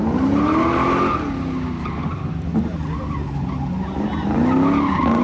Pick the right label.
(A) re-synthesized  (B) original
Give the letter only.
B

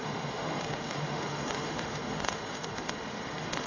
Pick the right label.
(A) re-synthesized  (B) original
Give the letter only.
A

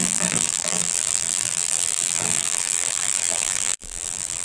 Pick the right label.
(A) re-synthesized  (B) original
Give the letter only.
A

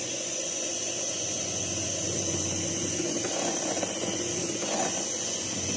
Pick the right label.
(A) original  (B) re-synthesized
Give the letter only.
B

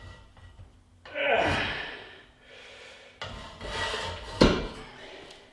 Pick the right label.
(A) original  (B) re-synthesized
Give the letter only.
A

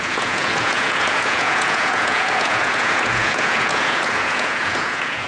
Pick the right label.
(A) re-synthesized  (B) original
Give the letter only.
A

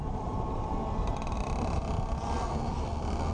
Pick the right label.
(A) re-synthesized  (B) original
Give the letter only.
A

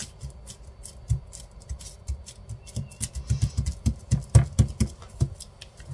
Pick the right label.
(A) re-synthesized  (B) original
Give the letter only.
B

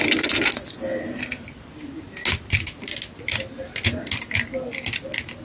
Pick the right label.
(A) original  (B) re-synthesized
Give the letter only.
A